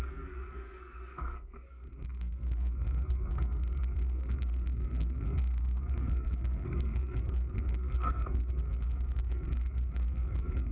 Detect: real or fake fake